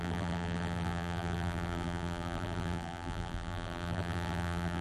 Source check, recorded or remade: remade